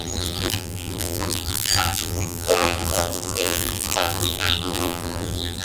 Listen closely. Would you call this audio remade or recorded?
remade